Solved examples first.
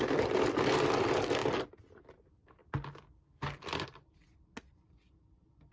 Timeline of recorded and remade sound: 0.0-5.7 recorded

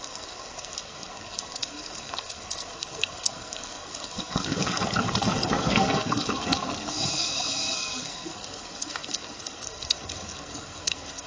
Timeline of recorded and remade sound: 0.0-11.3 remade

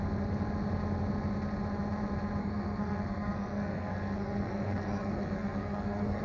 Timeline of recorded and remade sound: 0.0-2.4 recorded; 2.4-6.2 remade

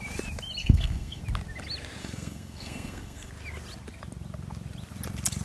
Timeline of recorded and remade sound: 0.0-0.6 recorded; 0.6-1.2 remade; 1.2-2.0 recorded; 2.0-3.3 remade; 3.3-5.4 recorded

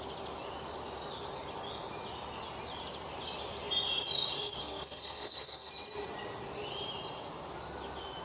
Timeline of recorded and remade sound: 0.0-4.6 recorded; 4.6-5.7 remade; 5.7-8.2 recorded

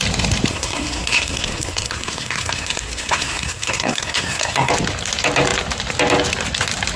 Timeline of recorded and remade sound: 0.0-0.5 recorded; 0.5-4.7 remade; 4.7-7.0 recorded